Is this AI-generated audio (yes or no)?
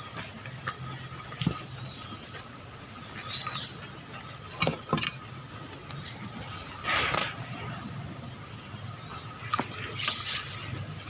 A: no